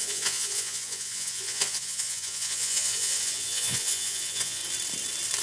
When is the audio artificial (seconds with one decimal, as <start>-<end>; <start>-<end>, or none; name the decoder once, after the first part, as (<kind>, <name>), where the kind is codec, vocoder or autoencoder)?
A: 0.0-4.6 (vocoder, Vocos)